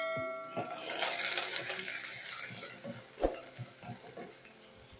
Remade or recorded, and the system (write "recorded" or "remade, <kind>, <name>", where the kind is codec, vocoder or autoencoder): recorded